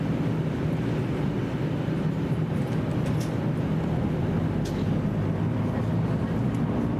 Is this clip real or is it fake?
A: real